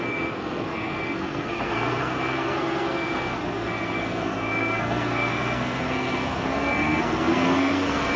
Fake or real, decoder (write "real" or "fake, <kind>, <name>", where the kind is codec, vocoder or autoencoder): fake, codec, SNAC